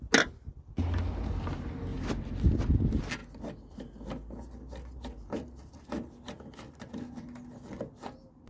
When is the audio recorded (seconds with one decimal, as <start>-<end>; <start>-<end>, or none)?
0.0-8.5